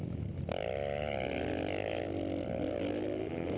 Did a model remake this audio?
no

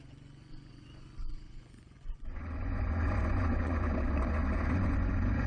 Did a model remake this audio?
yes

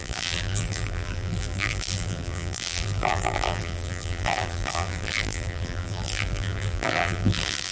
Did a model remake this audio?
yes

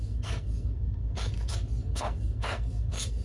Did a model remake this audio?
yes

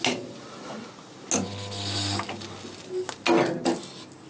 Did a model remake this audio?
no